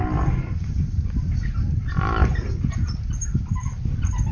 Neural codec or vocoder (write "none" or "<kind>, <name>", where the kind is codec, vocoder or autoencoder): none